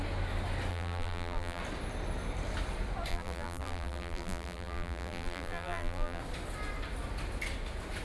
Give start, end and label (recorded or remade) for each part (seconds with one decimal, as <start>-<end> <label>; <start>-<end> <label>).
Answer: 0.0-0.7 recorded; 0.7-1.6 remade; 1.6-3.1 recorded; 3.1-6.2 remade; 6.2-8.0 recorded